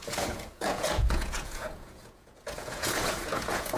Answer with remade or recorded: remade